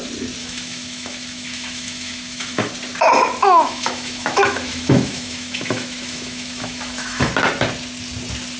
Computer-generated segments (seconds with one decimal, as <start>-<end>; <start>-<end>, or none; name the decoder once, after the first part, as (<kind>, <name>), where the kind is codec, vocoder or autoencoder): 0.4-2.7 (autoencoder, DAC-VAE); 3.4-7.3